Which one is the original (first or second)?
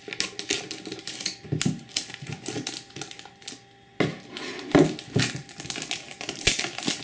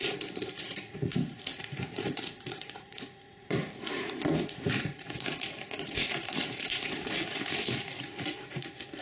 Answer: first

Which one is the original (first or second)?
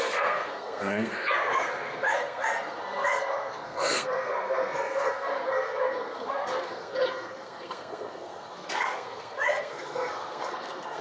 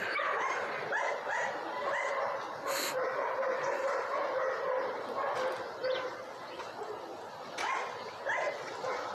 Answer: second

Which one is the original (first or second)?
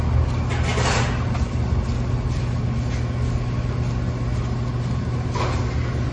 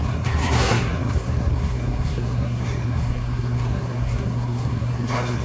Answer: first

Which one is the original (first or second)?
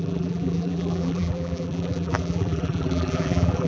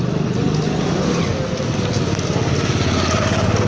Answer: second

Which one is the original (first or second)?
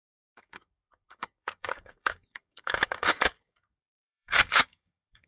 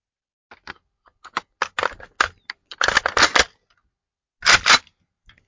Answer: second